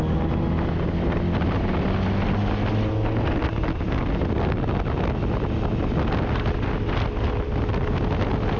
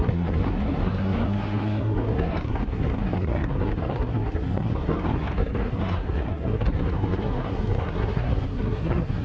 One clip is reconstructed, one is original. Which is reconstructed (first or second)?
second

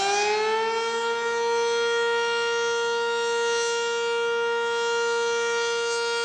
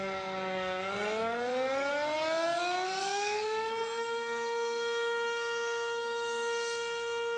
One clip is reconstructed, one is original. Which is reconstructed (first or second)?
second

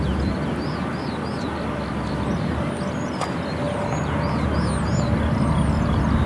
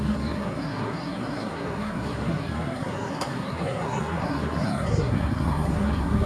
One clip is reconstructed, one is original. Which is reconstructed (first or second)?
second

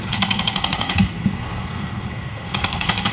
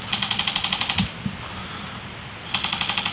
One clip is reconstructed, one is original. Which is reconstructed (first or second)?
first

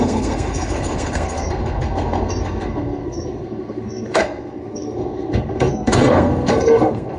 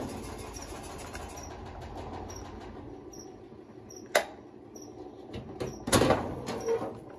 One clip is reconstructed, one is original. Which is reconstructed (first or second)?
first